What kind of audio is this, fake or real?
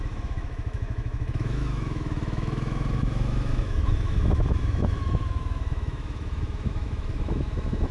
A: fake